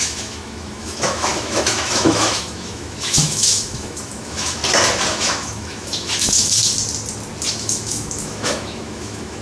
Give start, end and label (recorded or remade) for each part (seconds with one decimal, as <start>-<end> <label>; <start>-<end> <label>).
0.0-4.6 remade; 4.6-5.1 recorded; 5.1-6.6 remade; 6.6-7.5 recorded; 7.5-9.4 remade